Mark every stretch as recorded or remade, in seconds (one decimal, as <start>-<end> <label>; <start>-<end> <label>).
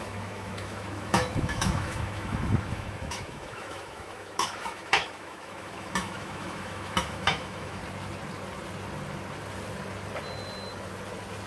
0.0-7.8 remade; 7.8-11.5 recorded